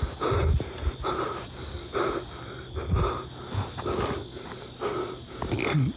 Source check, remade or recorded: recorded